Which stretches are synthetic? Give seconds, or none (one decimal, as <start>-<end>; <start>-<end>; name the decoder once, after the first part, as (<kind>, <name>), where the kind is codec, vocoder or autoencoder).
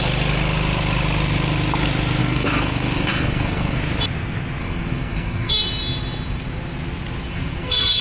2.2-3.8 (codec, SNAC); 4.6-5.6; 7.3-8.0